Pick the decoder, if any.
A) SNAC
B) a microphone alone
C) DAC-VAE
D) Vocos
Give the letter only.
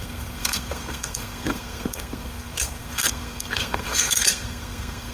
A